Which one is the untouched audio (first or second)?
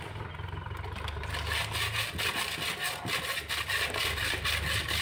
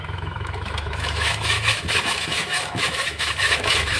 first